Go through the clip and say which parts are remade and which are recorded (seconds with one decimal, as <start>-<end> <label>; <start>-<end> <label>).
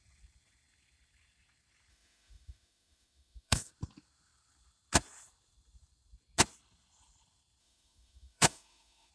0.0-1.9 recorded; 1.9-3.7 remade; 3.7-7.6 recorded; 7.6-9.1 remade